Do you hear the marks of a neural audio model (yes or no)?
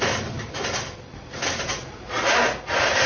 no